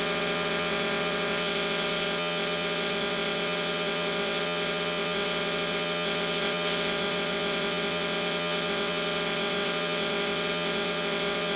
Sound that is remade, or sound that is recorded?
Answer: remade